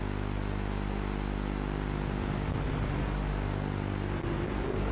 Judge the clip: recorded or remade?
recorded